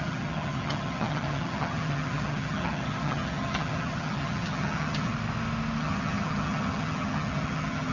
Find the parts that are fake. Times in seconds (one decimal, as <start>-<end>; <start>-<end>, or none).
0.0-5.1; 5.8-7.9